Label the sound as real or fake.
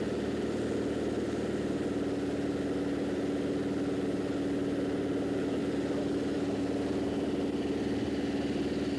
real